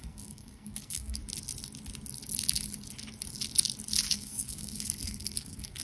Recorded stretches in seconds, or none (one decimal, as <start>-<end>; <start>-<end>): 1.2-4.1

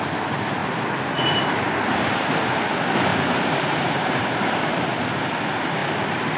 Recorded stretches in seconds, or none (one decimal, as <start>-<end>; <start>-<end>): 0.0-0.6; 2.3-3.1; 5.2-6.4

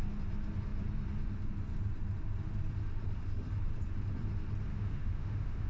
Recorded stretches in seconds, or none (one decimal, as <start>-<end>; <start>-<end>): 0.0-4.7

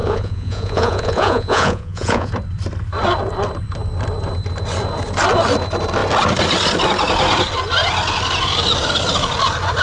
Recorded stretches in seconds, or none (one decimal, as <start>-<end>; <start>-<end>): 2.3-9.8

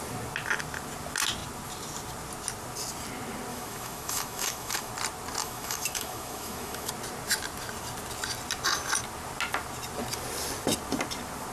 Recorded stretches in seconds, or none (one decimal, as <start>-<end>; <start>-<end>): 0.0-3.5; 4.9-5.4; 6.9-11.5

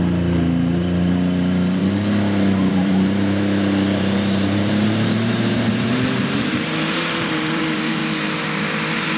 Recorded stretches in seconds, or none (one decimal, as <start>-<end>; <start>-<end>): 1.8-2.7; 8.0-9.2